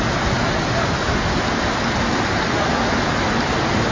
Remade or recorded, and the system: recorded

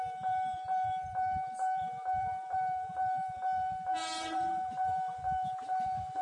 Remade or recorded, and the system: remade, vocoder, BigVGAN v2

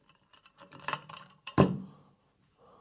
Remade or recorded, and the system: remade, vocoder, BigVGAN v2